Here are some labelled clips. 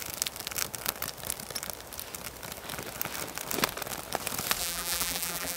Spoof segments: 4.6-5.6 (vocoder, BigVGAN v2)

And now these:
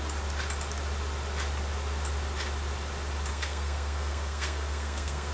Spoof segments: 3.3-5.3 (codec, SNAC)